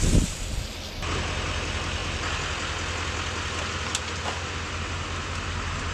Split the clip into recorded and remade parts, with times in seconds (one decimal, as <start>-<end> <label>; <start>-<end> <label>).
0.0-5.9 recorded